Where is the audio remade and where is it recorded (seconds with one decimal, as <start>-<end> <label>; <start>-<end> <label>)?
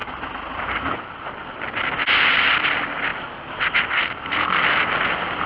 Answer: 0.0-5.5 recorded